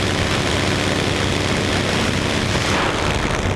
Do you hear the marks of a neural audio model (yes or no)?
no